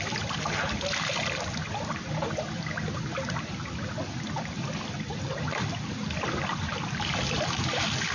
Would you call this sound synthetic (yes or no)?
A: no